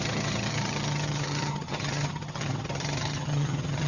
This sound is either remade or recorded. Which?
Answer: remade